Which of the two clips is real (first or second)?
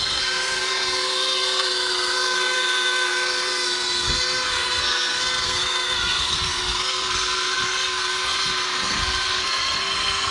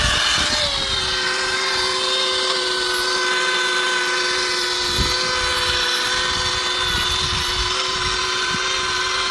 second